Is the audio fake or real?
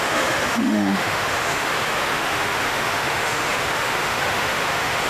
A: fake